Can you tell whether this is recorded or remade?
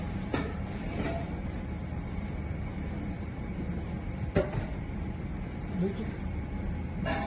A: remade